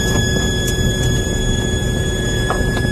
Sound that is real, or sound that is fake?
fake